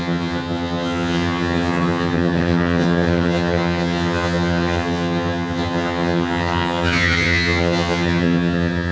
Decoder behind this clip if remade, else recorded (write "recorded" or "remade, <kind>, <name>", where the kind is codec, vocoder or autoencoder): remade, vocoder, HiFi-GAN